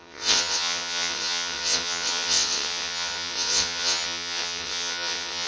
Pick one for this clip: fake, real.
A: fake